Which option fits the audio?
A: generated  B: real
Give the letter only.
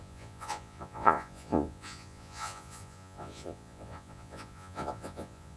A